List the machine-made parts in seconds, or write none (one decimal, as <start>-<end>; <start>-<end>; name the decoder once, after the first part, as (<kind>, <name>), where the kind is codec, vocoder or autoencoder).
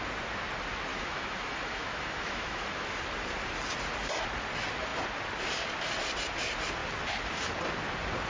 0.9-3.0 (autoencoder, DAC-VAE)